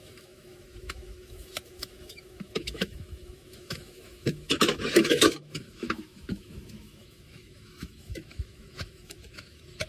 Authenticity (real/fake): fake